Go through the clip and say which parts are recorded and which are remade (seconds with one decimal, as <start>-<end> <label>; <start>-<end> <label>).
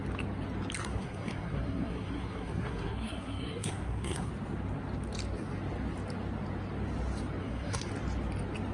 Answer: 0.0-0.8 recorded; 0.8-4.3 remade; 4.3-7.4 recorded; 7.4-7.9 remade; 7.9-8.7 recorded